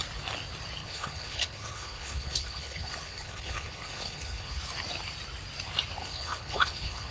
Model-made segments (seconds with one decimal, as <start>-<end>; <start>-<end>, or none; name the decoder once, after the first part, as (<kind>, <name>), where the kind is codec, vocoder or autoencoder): 0.8-4.6 (codec, HILCodec); 6.0-7.1